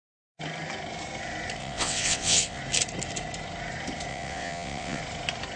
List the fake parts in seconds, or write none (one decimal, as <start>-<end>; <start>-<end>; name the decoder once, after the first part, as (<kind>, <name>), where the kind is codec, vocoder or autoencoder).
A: 1.6-2.6 (vocoder, WaveNeXt); 4.1-5.0